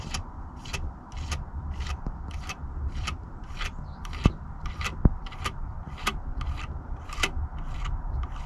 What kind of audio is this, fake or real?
real